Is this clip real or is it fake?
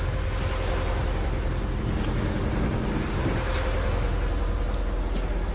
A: real